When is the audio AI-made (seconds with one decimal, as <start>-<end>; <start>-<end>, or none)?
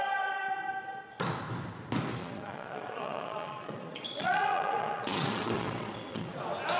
2.2-6.3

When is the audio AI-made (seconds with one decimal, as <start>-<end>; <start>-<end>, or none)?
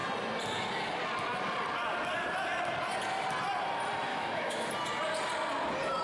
4.1-4.7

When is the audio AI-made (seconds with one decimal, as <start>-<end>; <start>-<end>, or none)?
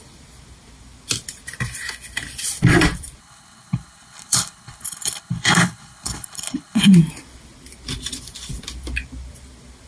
3.2-6.9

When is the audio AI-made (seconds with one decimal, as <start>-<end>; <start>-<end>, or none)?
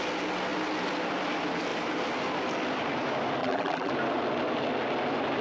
3.4-3.9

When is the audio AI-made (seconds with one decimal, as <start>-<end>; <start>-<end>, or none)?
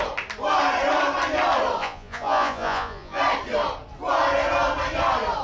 1.8-3.2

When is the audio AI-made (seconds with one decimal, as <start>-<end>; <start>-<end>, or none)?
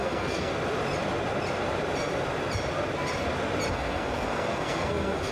0.0-0.5; 3.7-5.3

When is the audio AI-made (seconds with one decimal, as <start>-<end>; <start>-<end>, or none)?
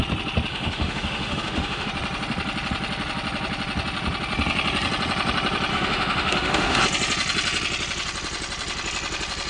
0.5-1.9; 5.7-6.8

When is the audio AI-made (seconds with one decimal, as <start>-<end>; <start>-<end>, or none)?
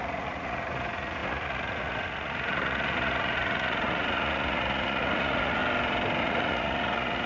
0.0-5.6; 6.2-7.3